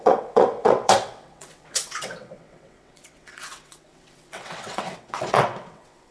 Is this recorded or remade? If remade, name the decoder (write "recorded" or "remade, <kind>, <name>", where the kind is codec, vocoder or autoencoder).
remade, vocoder, WaveNeXt